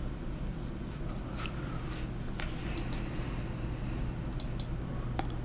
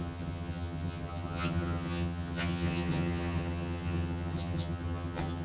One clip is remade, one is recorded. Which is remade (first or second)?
second